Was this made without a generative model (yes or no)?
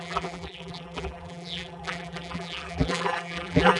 no